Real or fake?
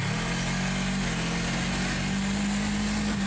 real